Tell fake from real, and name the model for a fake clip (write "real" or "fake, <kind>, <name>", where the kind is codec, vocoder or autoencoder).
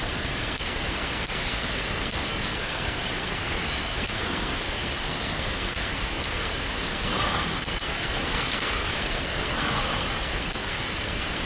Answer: fake, codec, SNAC